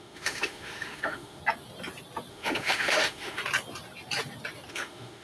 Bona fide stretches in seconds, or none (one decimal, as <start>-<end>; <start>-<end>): 1.4-2.3; 3.4-4.7